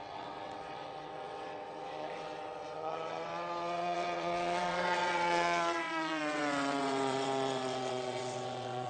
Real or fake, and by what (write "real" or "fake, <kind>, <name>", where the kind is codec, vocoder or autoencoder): fake, vocoder, WaveNeXt